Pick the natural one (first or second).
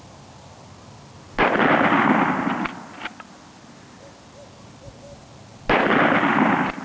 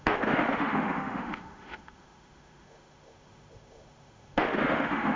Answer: first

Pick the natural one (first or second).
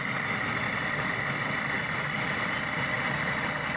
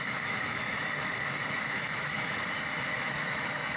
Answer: first